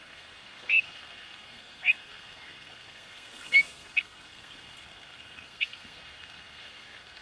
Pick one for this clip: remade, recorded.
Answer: remade